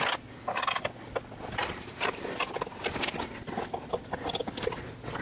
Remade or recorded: recorded